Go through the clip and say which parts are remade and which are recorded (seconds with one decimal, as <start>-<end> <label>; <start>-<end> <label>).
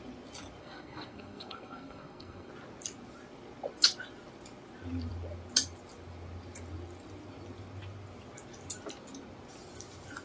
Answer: 0.0-0.6 recorded; 0.6-2.5 remade; 2.5-10.2 recorded